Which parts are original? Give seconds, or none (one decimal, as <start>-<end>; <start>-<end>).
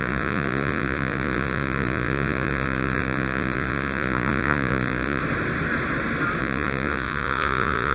5.2-6.4